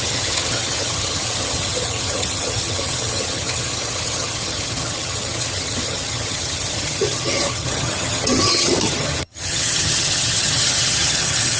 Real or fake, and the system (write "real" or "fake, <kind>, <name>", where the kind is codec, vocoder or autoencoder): fake, vocoder, HiFi-GAN